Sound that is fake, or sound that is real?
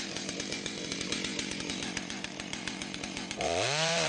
fake